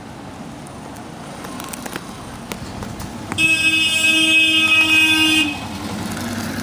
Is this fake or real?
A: real